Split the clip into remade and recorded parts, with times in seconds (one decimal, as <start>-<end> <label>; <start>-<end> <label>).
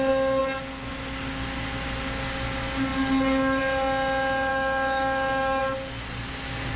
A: 0.0-4.5 recorded; 4.5-5.6 remade; 5.6-6.8 recorded